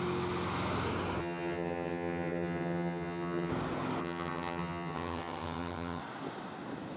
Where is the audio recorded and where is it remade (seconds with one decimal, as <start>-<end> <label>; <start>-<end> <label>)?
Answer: 0.0-1.2 recorded; 1.2-3.5 remade; 3.5-4.0 recorded; 4.0-6.0 remade; 6.0-7.0 recorded